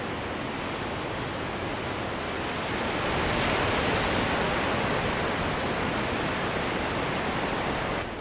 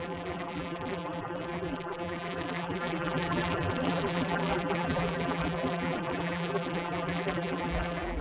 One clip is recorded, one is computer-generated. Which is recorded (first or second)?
first